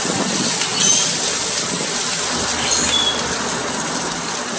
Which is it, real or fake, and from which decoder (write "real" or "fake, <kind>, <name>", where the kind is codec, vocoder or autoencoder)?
real